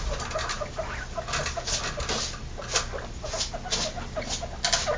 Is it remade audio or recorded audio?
recorded